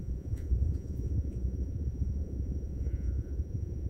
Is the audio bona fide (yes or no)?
no